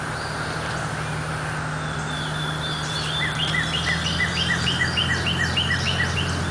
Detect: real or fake real